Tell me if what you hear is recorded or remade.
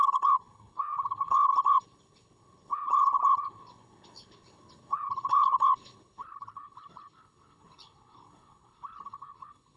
remade